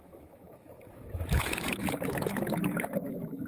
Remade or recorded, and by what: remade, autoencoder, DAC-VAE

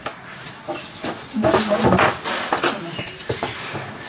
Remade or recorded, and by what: recorded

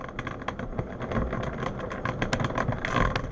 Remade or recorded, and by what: recorded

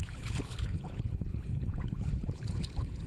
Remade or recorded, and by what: remade, codec, HILCodec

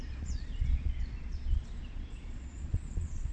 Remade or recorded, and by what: remade, vocoder, Vocos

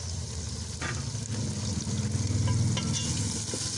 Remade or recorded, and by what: recorded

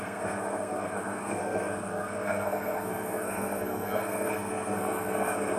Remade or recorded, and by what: remade, codec, SNAC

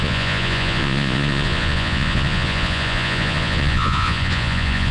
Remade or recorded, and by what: remade, vocoder, Vocos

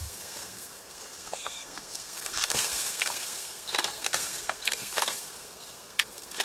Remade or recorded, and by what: remade, codec, SNAC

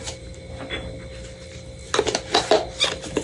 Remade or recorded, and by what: recorded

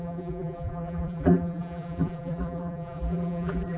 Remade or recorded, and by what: remade, vocoder, BigVGAN v2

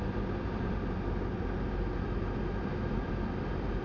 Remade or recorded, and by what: recorded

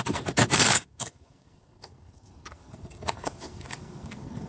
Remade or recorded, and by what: remade, codec, SNAC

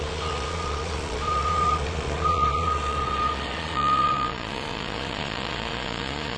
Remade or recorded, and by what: remade, vocoder, Vocos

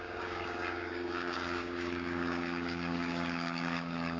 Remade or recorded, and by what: remade, codec, DAC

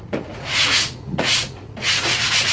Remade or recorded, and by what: remade, vocoder, Vocos